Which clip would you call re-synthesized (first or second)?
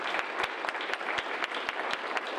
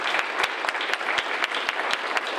first